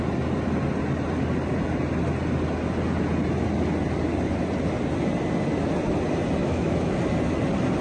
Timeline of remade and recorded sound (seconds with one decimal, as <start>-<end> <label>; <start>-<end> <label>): 0.0-6.4 recorded; 6.4-6.9 remade; 6.9-7.8 recorded